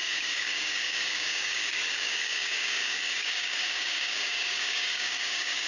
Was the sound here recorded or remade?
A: remade